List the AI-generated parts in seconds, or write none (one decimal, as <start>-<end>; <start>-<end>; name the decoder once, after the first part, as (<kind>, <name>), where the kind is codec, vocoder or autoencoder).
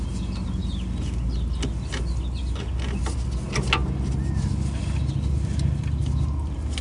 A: none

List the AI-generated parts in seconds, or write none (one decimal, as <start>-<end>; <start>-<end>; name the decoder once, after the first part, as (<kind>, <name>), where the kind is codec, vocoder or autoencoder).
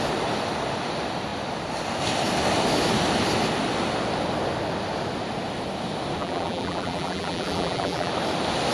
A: 6.2-8.1 (vocoder, BigVGAN v2)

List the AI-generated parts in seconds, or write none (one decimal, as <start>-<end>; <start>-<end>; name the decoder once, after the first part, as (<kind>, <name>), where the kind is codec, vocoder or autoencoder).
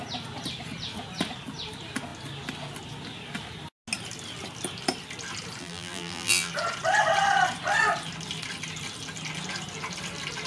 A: 5.6-6.5 (vocoder, BigVGAN v2)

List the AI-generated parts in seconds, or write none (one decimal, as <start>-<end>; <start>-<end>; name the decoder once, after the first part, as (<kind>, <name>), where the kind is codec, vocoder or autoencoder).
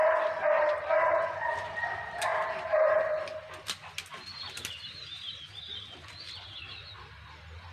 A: none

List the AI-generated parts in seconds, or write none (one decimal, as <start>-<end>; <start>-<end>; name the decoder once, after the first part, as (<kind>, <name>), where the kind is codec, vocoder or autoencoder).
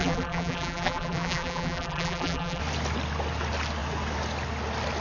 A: 0.0-2.6 (vocoder, BigVGAN v2)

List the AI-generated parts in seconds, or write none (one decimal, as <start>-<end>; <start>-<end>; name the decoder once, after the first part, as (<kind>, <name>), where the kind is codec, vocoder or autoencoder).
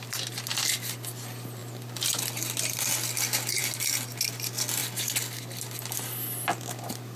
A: none